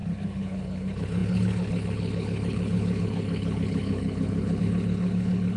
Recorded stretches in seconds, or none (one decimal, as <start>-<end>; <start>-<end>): none